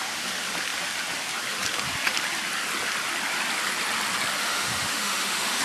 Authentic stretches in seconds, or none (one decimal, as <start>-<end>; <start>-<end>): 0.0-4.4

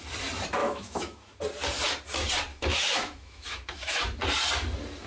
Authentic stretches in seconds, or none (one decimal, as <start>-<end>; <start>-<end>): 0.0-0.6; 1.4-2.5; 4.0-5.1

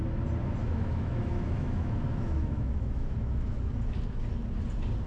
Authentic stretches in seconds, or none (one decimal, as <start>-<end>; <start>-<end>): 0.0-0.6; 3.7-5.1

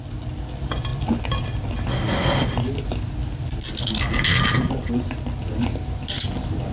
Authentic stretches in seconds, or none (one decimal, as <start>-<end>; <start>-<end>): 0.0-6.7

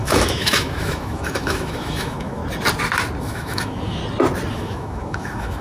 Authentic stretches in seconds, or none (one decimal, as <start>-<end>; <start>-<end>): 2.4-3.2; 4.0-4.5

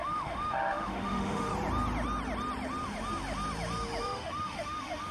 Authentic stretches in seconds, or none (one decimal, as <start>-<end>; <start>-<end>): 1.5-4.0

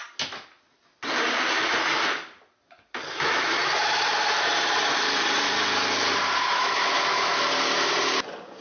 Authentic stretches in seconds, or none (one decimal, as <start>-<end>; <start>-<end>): 0.0-3.1; 3.6-6.4; 7.3-8.6